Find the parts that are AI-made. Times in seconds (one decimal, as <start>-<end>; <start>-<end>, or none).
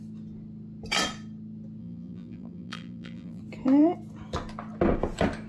1.8-3.4